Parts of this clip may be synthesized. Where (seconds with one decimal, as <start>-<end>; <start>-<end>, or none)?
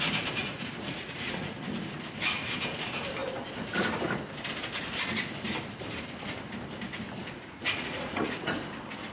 0.4-1.6; 7.2-8.5